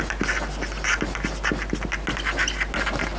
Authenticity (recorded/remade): recorded